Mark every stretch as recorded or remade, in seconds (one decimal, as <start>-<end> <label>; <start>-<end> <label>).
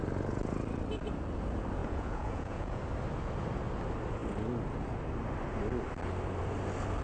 0.0-1.8 recorded; 1.8-2.8 remade; 2.8-7.0 recorded